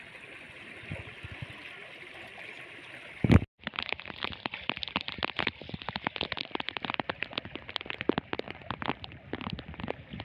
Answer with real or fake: real